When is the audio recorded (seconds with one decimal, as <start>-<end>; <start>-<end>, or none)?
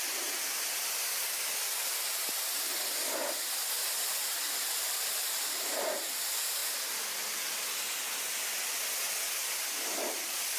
0.0-10.6